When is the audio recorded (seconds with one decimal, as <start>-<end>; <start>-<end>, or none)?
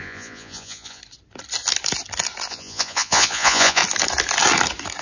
1.0-2.5; 3.8-5.0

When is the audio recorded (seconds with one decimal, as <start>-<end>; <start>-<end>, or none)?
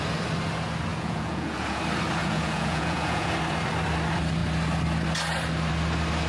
0.0-0.9; 1.8-2.2; 3.3-6.3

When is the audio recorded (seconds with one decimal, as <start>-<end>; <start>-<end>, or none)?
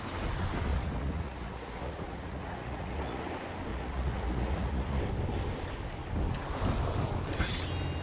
0.0-0.7; 3.2-3.7; 5.0-8.0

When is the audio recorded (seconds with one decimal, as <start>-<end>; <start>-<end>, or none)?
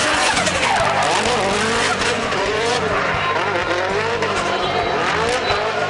0.7-1.9; 3.0-5.9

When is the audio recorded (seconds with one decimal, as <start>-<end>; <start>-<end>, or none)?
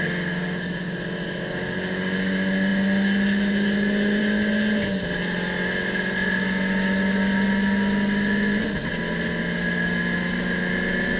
0.0-11.2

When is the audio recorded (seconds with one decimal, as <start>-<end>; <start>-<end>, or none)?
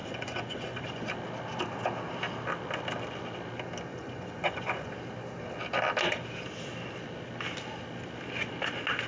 1.0-3.9; 4.9-9.1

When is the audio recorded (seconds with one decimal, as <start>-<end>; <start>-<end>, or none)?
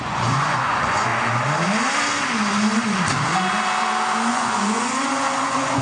1.1-4.3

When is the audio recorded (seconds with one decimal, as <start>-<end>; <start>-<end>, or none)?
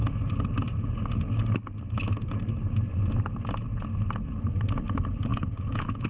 0.0-5.3